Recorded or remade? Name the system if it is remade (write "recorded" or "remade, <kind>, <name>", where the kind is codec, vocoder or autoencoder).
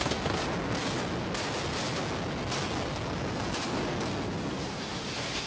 recorded